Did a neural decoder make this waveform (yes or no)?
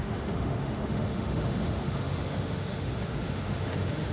yes